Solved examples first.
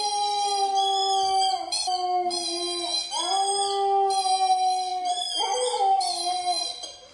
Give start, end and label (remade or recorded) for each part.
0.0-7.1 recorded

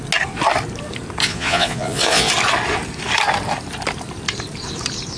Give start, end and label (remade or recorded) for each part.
0.0-1.2 recorded; 1.2-2.3 remade; 2.3-5.2 recorded